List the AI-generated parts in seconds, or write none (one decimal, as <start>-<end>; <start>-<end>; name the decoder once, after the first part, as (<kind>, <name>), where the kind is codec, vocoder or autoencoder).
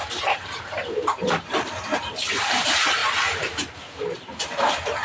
none